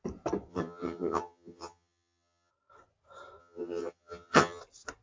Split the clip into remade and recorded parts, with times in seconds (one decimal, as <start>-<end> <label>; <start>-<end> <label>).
0.0-0.5 recorded; 0.5-2.5 remade; 2.5-3.4 recorded; 3.4-4.6 remade; 4.6-5.0 recorded